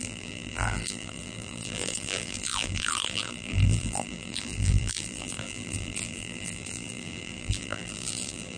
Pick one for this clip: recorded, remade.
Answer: remade